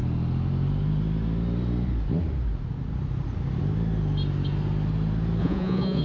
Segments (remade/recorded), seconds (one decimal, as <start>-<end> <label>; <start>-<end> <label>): 0.0-5.4 recorded; 5.4-6.0 remade